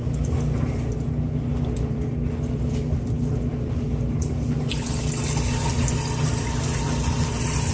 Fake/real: real